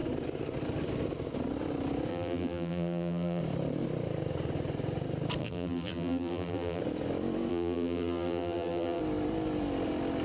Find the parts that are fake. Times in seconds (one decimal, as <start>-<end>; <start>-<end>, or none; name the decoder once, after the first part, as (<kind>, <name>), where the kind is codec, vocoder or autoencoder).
2.1-3.4 (vocoder, BigVGAN v2); 5.4-6.8; 7.5-9.0